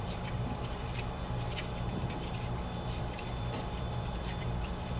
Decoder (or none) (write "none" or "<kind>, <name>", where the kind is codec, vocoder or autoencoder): vocoder, BigVGAN v2